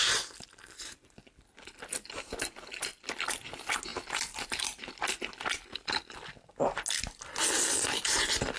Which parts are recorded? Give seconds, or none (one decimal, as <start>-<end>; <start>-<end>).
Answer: 0.0-3.9; 4.9-8.6